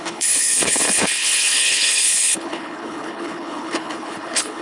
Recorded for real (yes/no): no